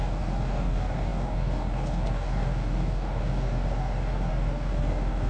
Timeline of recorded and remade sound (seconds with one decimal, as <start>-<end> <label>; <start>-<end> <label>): 0.0-5.3 remade